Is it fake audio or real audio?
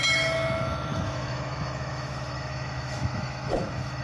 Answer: fake